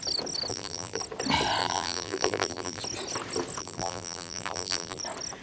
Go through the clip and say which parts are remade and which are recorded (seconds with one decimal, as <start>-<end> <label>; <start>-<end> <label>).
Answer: 0.0-0.5 recorded; 0.5-1.0 remade; 1.0-1.6 recorded; 1.6-2.8 remade; 2.8-3.6 recorded; 3.6-5.0 remade; 5.0-5.4 recorded